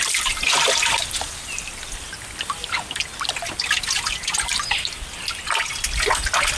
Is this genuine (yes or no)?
yes